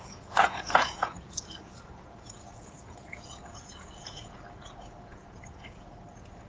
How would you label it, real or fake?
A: fake